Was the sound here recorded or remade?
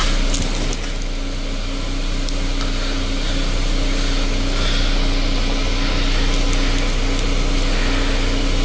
recorded